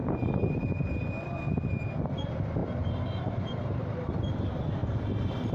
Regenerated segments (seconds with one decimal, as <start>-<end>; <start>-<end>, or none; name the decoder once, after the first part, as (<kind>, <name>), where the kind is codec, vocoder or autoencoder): 0.0-0.9 (vocoder, BigVGAN v2); 2.6-3.8; 4.8-5.5